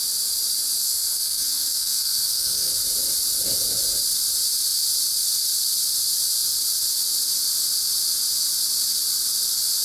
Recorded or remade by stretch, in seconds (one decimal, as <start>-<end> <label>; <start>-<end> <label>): 0.0-0.8 recorded; 0.8-2.7 remade; 2.7-9.8 recorded